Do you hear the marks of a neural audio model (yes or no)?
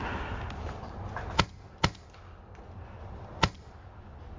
no